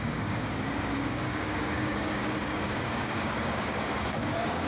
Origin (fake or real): fake